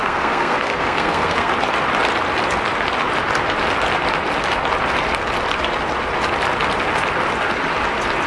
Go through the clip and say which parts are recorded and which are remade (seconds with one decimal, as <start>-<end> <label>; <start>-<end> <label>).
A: 0.0-1.5 remade; 1.5-8.3 recorded